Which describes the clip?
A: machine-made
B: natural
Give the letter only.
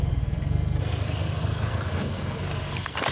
A